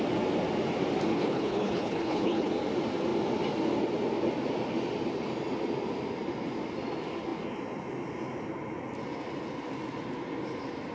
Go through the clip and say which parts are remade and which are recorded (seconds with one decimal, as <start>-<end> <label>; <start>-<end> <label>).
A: 0.0-1.1 recorded; 1.1-2.5 remade; 2.5-10.9 recorded